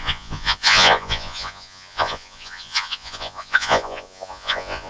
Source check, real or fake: fake